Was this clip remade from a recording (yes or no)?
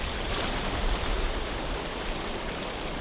yes